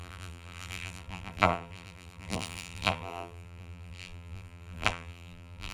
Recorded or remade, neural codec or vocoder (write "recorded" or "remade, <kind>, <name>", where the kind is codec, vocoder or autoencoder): remade, vocoder, BigVGAN v2